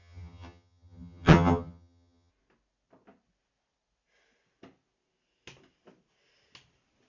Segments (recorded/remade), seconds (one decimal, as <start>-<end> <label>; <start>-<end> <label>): 0.0-2.3 remade; 2.3-7.1 recorded